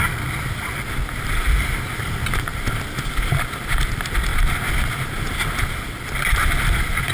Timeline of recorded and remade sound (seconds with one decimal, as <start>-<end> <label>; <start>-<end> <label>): 0.0-7.1 recorded